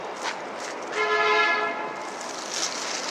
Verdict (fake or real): real